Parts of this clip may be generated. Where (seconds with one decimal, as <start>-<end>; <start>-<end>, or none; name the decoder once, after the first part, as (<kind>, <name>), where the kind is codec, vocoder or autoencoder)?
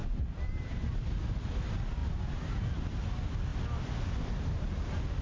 none